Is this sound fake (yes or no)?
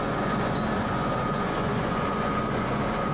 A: yes